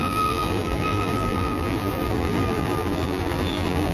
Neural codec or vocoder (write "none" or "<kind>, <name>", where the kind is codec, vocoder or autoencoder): vocoder, BigVGAN v2